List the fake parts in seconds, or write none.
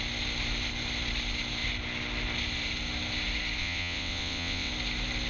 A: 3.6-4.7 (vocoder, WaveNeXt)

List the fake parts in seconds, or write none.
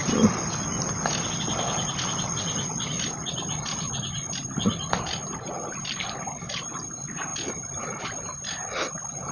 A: none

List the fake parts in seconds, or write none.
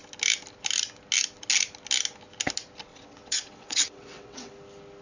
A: 2.9-4.5 (vocoder, WaveNeXt)